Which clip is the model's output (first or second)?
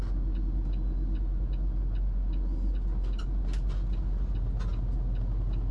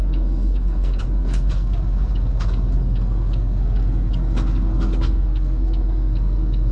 second